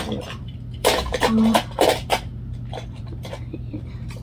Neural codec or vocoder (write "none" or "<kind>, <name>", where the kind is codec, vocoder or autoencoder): vocoder, BigVGAN v2